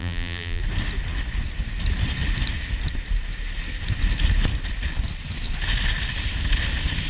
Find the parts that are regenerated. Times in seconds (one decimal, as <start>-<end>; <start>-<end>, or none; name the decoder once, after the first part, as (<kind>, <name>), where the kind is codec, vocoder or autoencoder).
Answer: 0.0-0.6 (vocoder, BigVGAN v2)